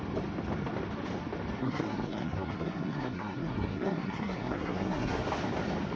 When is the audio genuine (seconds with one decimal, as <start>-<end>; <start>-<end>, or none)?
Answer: 0.0-1.6; 5.2-6.0